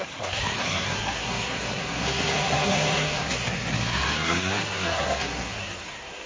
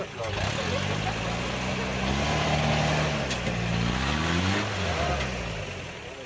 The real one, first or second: second